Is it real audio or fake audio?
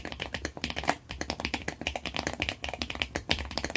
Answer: fake